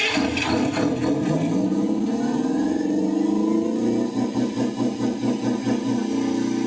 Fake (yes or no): no